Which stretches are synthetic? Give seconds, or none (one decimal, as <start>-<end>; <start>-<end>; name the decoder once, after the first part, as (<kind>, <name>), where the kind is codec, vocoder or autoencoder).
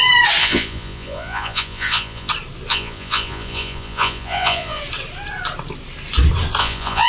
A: 0.4-2.3 (vocoder, Vocos); 2.7-4.8; 6.6-7.1